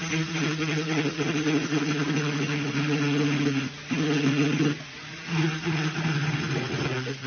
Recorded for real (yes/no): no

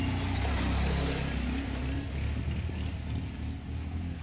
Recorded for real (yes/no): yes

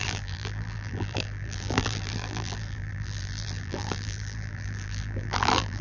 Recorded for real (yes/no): no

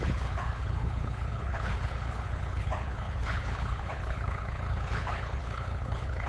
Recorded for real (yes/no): no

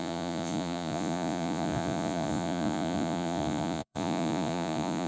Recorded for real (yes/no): no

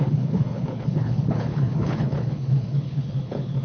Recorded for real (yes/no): no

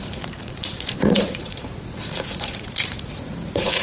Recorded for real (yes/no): no